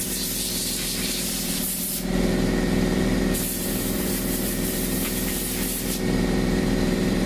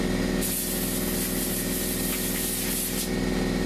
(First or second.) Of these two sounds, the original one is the second